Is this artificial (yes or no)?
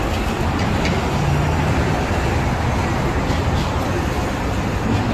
no